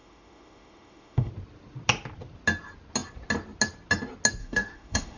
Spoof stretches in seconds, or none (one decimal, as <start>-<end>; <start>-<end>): 0.0-1.3; 4.4-5.2